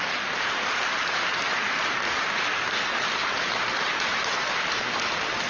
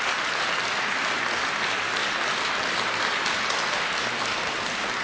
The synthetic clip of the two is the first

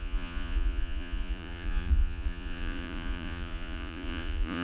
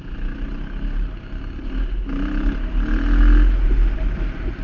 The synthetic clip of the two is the first